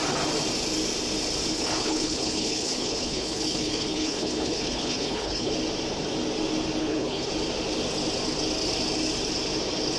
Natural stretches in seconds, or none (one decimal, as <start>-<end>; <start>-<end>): 0.0-1.5; 5.5-6.8; 7.3-10.0